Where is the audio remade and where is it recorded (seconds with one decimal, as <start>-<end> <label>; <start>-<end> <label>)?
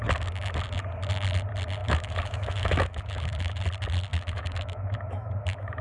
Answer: 0.0-1.8 recorded; 1.8-3.6 remade; 3.6-4.1 recorded; 4.1-5.8 remade